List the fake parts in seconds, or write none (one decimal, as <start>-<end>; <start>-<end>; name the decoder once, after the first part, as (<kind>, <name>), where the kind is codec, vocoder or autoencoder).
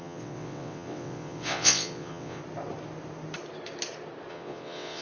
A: 0.0-2.4 (vocoder, WaveNeXt); 4.3-5.0